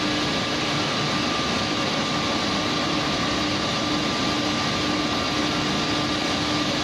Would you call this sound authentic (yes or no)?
yes